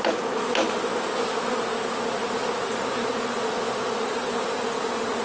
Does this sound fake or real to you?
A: real